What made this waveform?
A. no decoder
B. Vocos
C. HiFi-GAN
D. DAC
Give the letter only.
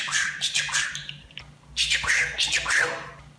A